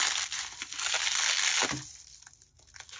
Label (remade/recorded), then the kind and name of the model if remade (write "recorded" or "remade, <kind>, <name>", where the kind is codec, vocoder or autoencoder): recorded